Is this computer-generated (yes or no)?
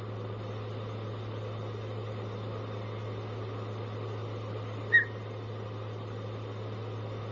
no